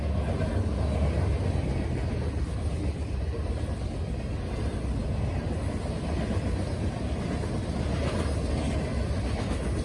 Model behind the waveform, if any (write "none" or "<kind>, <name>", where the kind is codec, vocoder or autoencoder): none